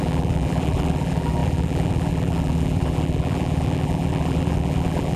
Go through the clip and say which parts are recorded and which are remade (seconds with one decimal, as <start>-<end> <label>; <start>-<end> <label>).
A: 0.0-5.2 remade